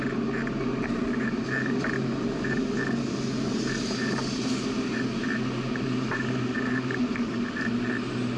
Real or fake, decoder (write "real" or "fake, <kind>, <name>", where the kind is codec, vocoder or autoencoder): real